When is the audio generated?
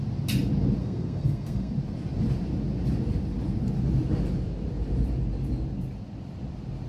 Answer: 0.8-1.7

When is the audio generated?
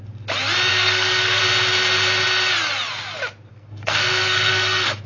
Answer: 0.7-1.4; 3.5-5.1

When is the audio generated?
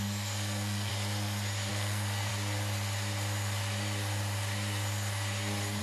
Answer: 0.0-0.9; 1.7-2.3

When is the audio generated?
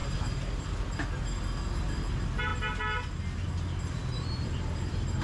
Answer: none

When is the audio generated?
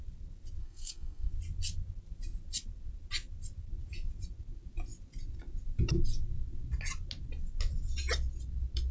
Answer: 0.6-1.3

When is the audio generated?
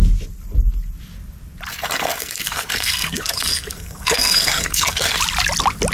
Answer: 1.7-5.2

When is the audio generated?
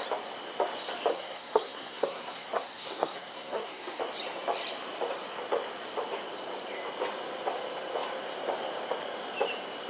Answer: 1.1-4.0